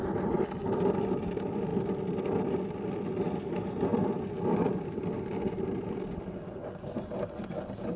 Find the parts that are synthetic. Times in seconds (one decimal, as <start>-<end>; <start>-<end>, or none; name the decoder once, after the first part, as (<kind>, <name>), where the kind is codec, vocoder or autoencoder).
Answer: none